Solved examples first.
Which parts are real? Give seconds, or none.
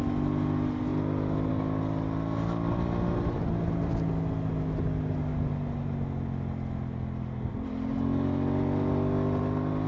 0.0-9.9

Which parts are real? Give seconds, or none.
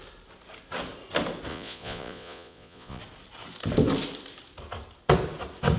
0.0-1.5; 3.0-5.8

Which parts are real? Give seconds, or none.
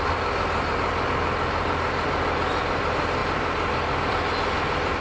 0.0-5.0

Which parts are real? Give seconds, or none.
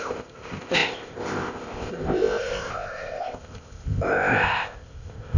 none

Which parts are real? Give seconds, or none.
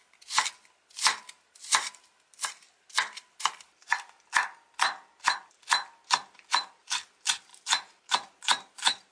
0.0-9.1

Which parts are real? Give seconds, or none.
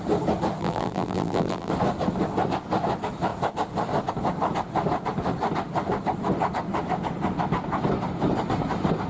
0.0-0.6; 1.7-9.1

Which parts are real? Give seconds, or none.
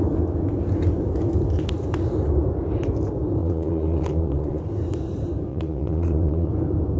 0.0-3.4; 4.6-5.5; 6.5-7.0